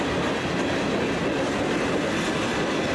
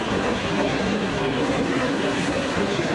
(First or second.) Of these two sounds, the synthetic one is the second